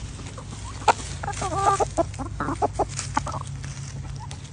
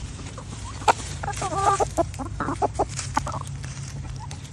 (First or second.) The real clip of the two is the first